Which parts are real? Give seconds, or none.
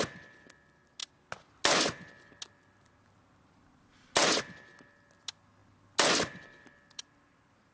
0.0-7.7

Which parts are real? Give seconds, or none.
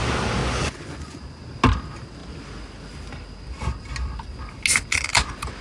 0.0-0.4; 1.2-5.6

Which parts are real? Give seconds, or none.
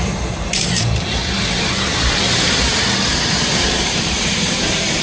1.2-3.3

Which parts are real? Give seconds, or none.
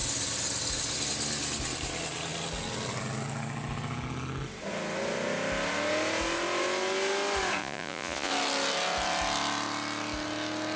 0.0-7.6; 8.3-10.8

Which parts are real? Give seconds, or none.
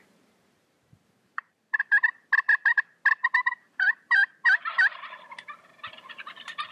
2.0-3.5; 4.2-5.7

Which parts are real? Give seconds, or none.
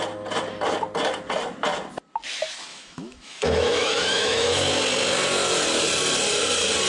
0.0-2.7; 4.7-6.9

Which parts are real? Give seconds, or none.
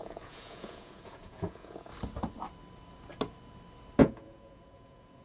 1.9-4.0